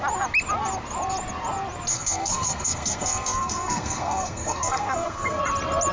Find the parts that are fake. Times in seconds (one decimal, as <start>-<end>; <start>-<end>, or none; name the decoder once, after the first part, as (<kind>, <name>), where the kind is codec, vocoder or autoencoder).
1.9-5.4 (codec, SNAC)